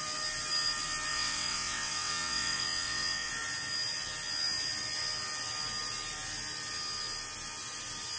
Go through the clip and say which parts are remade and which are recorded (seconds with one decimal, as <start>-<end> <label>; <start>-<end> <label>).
0.0-1.1 recorded; 1.1-3.3 remade; 3.3-8.2 recorded